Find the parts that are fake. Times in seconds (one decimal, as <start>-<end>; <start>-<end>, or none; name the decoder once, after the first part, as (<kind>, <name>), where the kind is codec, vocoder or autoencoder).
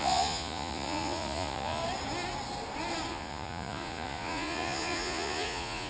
0.0-1.8 (vocoder, Vocos); 3.1-5.9